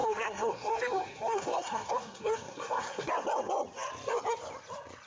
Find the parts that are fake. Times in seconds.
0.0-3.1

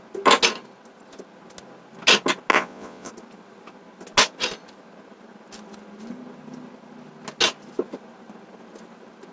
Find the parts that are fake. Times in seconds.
2.5-3.1

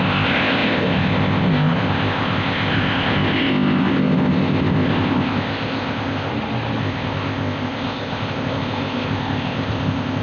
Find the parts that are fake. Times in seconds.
0.0-6.3; 6.8-10.2

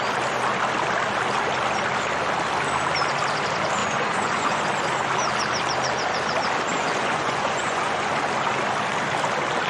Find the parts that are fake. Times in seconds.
3.8-4.6; 6.7-8.1

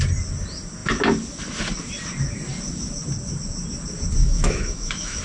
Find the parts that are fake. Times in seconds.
4.2-5.2